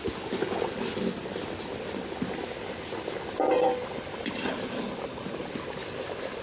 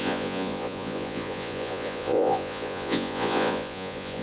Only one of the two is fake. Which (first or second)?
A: second